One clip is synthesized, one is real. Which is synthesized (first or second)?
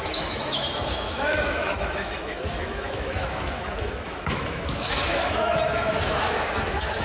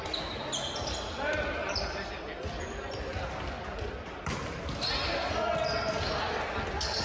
first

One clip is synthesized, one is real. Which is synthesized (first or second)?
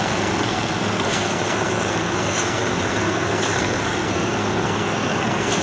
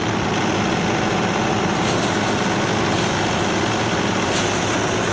first